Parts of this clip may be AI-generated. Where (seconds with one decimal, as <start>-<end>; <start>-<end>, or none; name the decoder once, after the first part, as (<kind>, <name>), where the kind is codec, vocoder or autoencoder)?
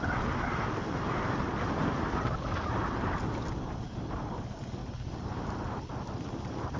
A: 4.8-5.5 (vocoder, BigVGAN v2)